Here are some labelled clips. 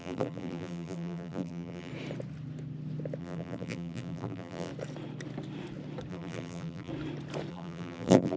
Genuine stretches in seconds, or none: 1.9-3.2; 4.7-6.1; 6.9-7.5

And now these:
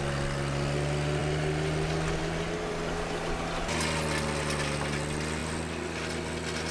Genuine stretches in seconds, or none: 0.0-6.7

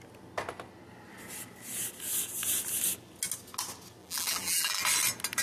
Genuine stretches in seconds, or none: 0.0-4.0; 4.8-5.4

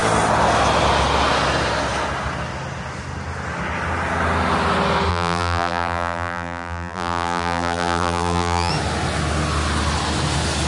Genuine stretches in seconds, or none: 0.0-5.1; 8.7-10.7

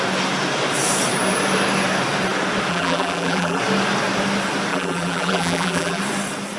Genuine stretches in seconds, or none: 0.0-2.7; 3.6-4.7; 6.0-6.6